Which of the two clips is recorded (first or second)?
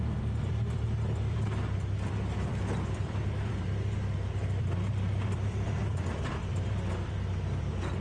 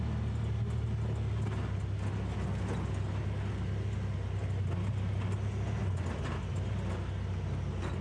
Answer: second